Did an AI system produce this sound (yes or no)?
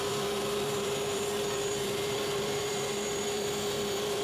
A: yes